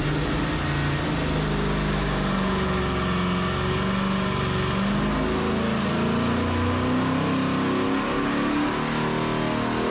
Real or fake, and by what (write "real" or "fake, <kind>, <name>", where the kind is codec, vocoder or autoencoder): real